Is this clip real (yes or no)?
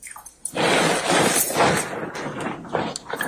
yes